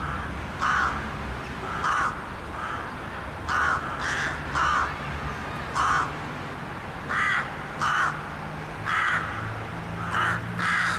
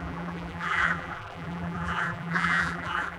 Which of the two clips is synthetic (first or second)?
second